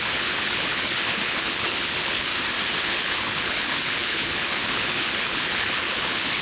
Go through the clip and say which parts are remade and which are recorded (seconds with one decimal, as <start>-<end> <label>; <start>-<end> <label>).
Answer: 0.0-2.3 remade; 2.3-2.8 recorded; 2.8-6.4 remade